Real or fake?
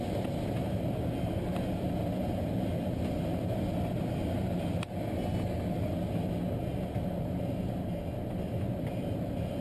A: real